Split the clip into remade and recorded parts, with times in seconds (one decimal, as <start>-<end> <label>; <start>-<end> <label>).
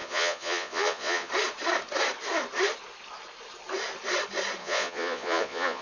0.0-1.3 remade; 1.3-4.6 recorded; 4.6-5.8 remade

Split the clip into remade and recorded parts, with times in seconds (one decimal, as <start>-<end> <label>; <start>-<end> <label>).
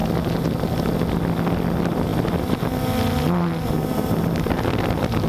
0.0-5.3 recorded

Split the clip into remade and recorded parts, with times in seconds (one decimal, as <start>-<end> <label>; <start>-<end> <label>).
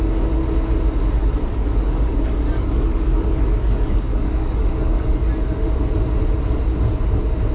0.0-1.2 recorded; 1.2-5.2 remade; 5.2-7.5 recorded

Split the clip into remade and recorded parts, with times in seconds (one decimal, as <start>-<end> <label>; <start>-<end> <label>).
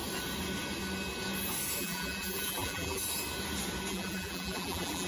0.0-1.8 recorded; 1.8-3.0 remade; 3.0-3.9 recorded; 3.9-5.1 remade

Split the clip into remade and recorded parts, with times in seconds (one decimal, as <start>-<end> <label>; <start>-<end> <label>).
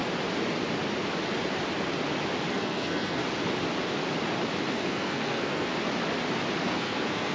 0.0-2.5 recorded; 2.5-3.2 remade; 3.2-4.7 recorded; 4.7-5.7 remade; 5.7-6.6 recorded; 6.6-7.3 remade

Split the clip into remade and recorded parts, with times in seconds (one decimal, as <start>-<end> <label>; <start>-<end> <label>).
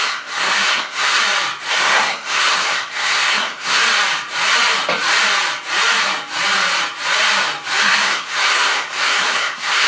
0.0-1.2 remade; 1.2-1.7 recorded; 1.7-3.8 remade; 3.8-7.8 recorded; 7.8-9.9 remade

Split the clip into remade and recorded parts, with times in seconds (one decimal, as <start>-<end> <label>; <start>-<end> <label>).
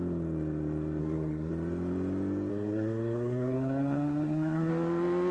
0.0-1.0 recorded; 1.0-1.5 remade; 1.5-2.5 recorded; 2.5-4.7 remade; 4.7-5.3 recorded